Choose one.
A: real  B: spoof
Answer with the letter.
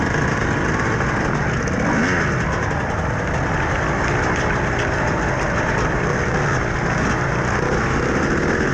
A